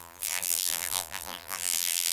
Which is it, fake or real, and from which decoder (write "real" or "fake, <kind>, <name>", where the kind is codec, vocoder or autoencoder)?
fake, vocoder, BigVGAN v2